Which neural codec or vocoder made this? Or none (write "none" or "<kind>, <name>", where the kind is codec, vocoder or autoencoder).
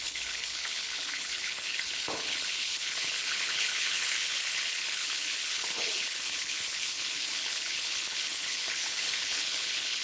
codec, HILCodec